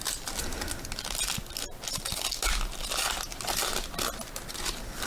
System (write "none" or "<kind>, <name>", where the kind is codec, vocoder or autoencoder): none